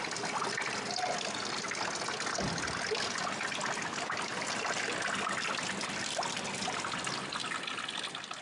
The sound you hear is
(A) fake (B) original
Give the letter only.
B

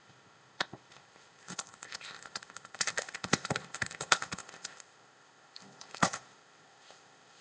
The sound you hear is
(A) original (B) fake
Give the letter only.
B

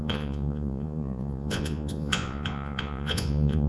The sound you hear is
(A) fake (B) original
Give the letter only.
A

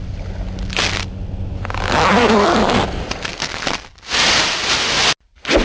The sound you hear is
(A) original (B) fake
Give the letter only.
A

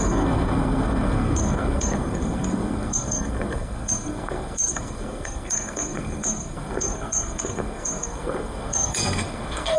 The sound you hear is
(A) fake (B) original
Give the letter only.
A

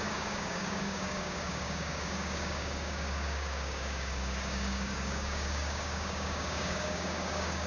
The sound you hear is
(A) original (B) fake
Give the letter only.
B